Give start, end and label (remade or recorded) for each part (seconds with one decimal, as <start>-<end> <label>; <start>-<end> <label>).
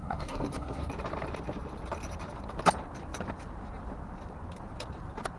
0.0-0.9 remade; 0.9-5.4 recorded